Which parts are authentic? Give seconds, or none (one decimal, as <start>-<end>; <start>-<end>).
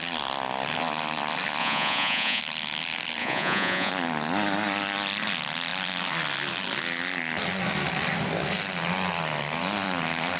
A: 0.0-1.6; 2.4-3.2; 3.9-10.4